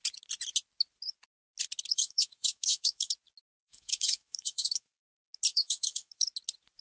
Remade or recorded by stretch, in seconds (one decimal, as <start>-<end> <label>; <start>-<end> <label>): 0.0-1.9 recorded; 1.9-3.1 remade; 3.1-3.5 recorded; 3.5-4.9 remade; 4.9-5.5 recorded; 5.5-6.2 remade; 6.2-6.8 recorded